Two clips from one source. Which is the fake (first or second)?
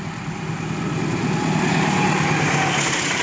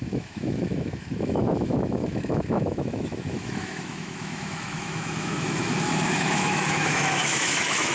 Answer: second